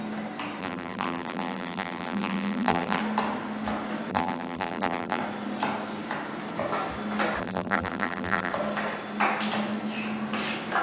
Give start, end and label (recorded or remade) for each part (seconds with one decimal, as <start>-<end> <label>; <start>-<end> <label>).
0.0-0.6 recorded; 0.6-3.0 remade; 3.0-4.1 recorded; 4.1-5.2 remade; 5.2-7.4 recorded; 7.4-8.5 remade; 8.5-10.8 recorded